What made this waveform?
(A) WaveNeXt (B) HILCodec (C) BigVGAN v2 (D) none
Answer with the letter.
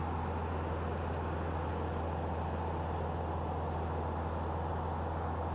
D